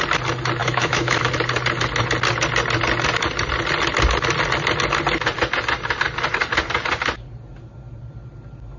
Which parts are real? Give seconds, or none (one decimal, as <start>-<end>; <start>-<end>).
0.0-0.6; 1.3-8.8